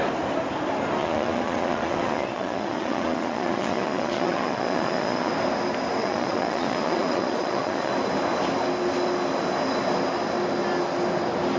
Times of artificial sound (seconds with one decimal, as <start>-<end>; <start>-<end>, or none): 1.0-5.3; 6.0-7.9